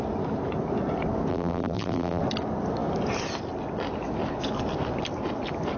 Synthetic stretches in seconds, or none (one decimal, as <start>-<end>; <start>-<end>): 1.3-2.2